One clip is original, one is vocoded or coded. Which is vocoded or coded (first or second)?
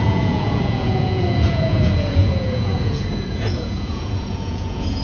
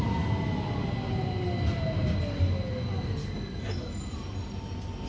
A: first